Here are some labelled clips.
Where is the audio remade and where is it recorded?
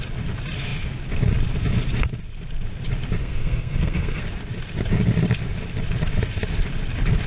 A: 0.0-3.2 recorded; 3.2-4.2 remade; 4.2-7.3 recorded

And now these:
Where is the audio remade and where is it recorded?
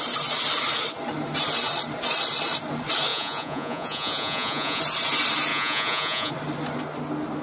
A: 0.0-3.1 recorded; 3.1-4.8 remade; 4.8-5.5 recorded; 5.5-6.3 remade; 6.3-7.4 recorded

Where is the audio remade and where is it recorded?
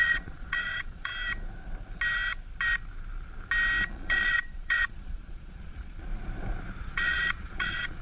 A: 0.0-1.1 remade; 1.1-3.9 recorded; 3.9-6.1 remade; 6.1-6.8 recorded; 6.8-8.0 remade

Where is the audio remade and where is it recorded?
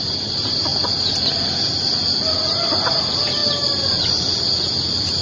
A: 0.0-5.2 recorded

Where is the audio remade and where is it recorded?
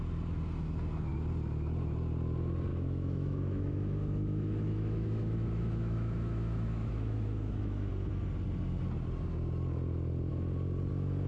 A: 0.0-2.7 recorded; 2.7-7.9 remade; 7.9-11.3 recorded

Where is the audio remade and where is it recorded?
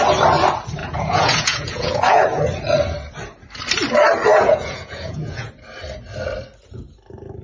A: 0.0-0.8 recorded; 0.8-2.4 remade; 2.4-4.3 recorded; 4.3-5.5 remade; 5.5-7.4 recorded